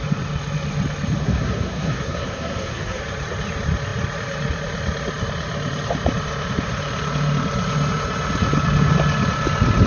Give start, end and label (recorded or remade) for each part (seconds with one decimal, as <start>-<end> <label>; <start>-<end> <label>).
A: 0.0-1.2 recorded; 1.2-3.0 remade; 3.0-9.9 recorded